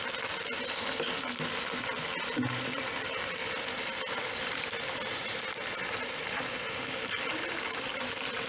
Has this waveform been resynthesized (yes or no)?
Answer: no